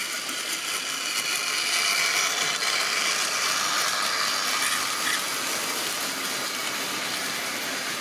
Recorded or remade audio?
recorded